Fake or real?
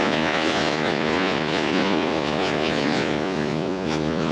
fake